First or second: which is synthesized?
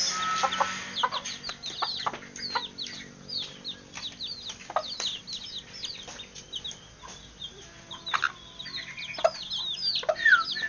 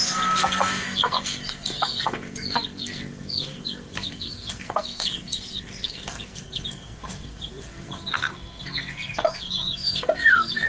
second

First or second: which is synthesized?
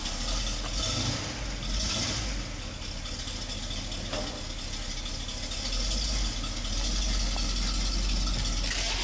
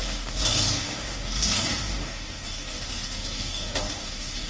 second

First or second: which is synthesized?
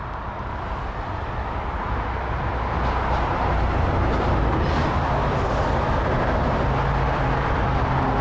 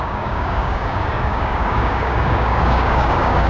second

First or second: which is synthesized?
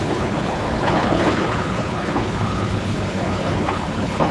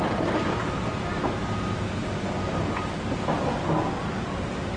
first